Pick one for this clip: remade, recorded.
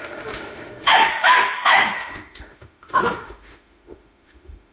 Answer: remade